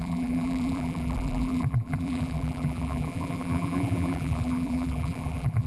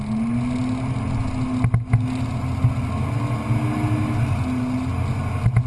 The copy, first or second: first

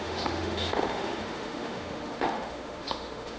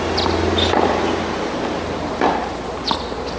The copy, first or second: first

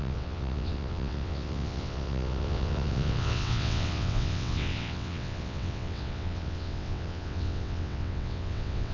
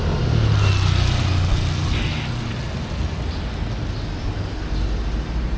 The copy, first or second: first